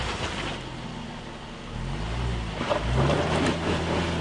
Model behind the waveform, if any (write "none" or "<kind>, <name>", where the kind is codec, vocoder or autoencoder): none